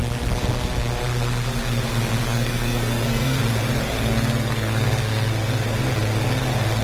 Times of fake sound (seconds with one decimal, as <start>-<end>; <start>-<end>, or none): 2.2-3.4; 3.8-5.3